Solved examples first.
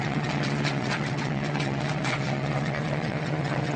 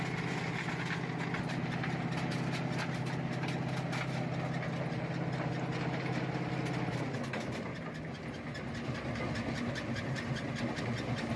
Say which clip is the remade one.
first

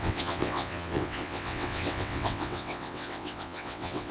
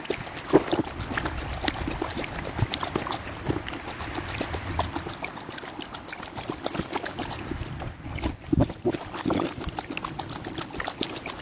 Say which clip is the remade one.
first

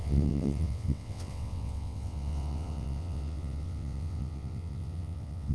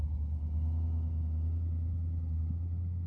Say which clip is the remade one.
first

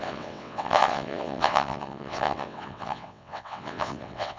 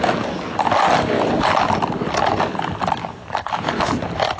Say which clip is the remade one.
first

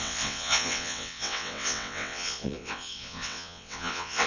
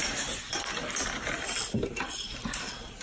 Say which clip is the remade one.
first